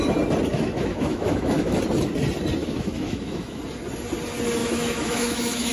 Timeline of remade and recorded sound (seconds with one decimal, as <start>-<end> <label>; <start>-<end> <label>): 0.0-0.5 recorded; 0.5-1.8 remade; 1.8-2.6 recorded; 2.6-3.6 remade; 3.6-4.6 recorded; 4.6-5.7 remade